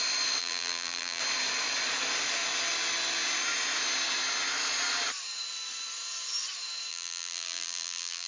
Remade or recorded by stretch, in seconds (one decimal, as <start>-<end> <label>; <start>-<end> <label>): 0.0-0.4 recorded; 0.4-1.2 remade; 1.2-6.9 recorded; 6.9-8.3 remade